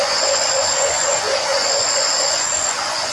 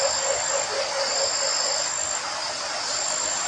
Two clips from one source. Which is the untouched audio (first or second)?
second